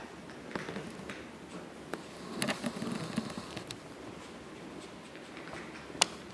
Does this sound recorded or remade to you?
recorded